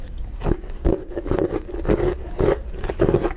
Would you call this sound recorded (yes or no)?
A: no